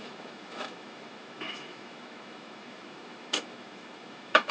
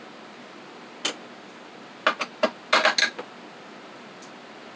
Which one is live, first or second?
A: second